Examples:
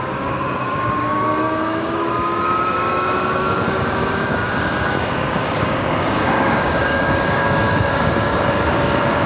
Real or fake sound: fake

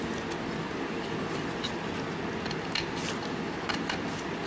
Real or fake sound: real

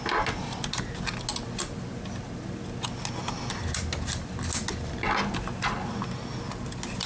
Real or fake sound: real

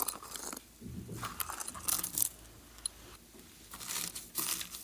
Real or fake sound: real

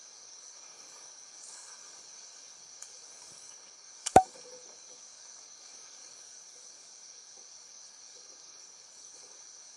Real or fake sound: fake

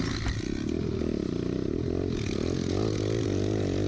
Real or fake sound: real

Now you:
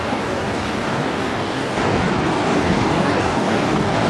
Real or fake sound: fake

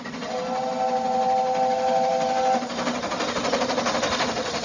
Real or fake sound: real